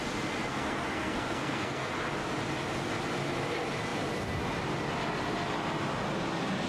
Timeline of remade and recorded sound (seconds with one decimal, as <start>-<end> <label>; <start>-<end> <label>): 0.0-0.5 recorded; 0.5-1.9 remade; 1.9-6.7 recorded